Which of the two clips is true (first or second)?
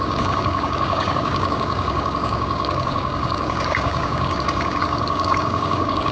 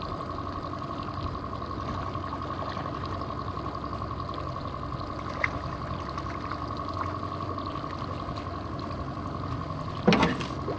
second